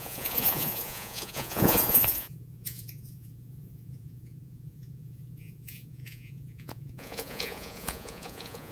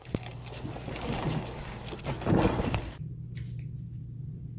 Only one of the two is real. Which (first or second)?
second